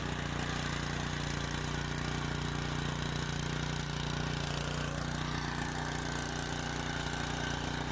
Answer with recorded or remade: recorded